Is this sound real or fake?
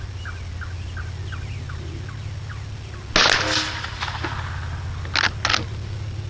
real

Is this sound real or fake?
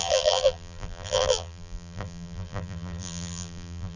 fake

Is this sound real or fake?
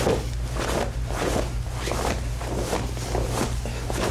real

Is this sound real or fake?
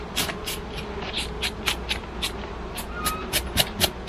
real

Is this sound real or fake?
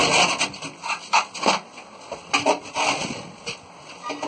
real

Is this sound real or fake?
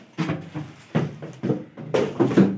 real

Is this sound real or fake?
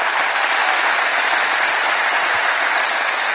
real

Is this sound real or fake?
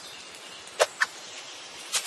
fake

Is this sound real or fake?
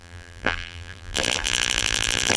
fake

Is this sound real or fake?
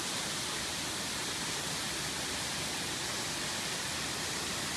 real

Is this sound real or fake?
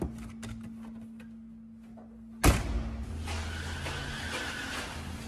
real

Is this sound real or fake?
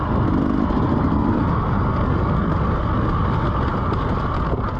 real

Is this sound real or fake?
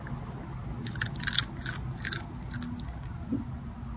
real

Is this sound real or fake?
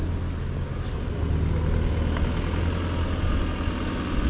real